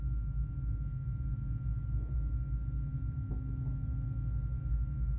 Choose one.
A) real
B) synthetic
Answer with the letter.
A